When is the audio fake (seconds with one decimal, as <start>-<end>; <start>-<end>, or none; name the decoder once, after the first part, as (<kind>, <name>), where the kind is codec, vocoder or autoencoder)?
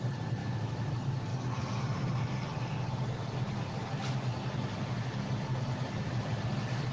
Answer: 0.4-0.9 (autoencoder, DAC-VAE)